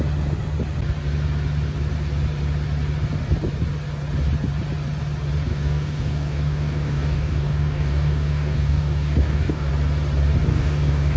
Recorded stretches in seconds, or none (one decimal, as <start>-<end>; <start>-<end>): 0.0-5.5; 9.7-10.5

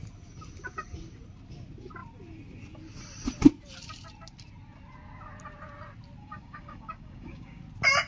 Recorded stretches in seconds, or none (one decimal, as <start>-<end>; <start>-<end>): 0.0-6.2; 7.6-8.1

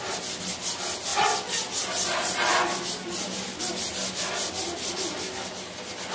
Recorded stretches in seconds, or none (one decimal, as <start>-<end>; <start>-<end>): 0.0-6.1

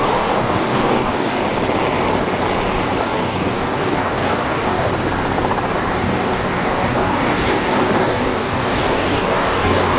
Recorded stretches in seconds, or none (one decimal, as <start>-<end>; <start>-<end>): 1.4-3.0; 4.9-5.9

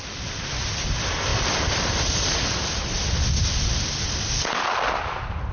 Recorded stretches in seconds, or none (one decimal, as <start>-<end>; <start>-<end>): 0.0-5.5

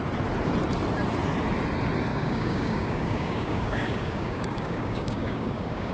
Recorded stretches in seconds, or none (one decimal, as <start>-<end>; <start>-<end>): 0.0-2.1